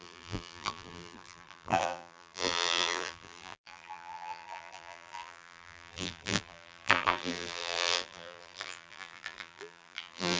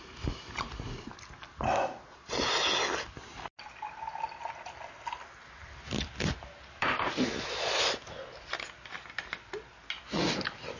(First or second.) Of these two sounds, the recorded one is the second